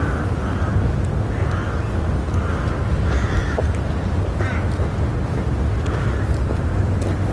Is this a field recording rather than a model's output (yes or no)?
yes